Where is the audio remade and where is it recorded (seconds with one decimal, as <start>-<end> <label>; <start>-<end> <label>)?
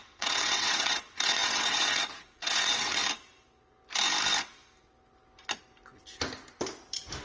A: 0.0-3.0 remade; 3.0-7.2 recorded